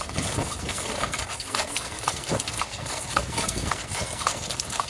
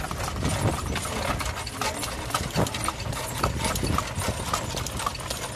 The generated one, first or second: first